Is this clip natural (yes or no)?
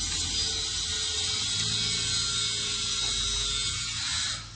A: yes